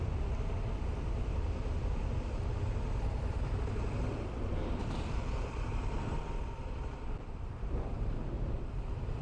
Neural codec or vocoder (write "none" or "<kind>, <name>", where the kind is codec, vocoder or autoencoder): none